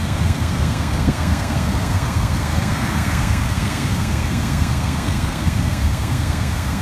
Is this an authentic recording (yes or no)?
no